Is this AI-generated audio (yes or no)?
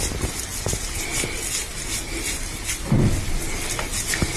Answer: yes